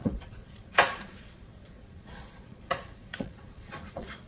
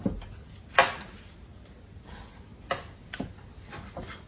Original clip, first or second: second